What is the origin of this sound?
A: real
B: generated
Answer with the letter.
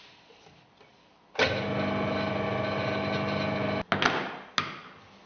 A